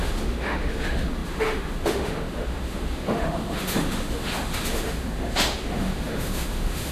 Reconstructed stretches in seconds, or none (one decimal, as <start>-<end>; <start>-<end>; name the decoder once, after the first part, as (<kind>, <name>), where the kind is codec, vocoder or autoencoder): 0.0-6.9 (autoencoder, DAC-VAE)